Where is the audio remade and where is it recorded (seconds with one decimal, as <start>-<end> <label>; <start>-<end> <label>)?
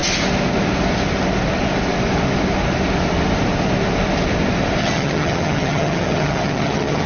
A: 0.0-4.8 recorded; 4.8-7.1 remade